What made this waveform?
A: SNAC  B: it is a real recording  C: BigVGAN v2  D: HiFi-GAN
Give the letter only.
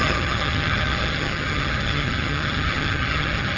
D